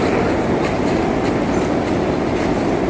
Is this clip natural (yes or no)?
yes